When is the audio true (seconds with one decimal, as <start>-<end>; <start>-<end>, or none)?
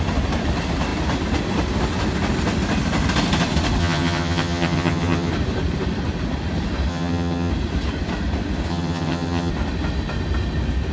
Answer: 0.0-3.8; 5.3-6.9; 7.5-8.7; 9.5-10.9